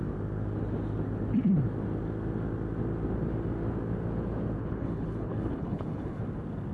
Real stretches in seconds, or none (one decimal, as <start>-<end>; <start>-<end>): 0.0-4.6; 6.2-6.7